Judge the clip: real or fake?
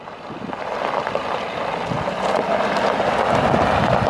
real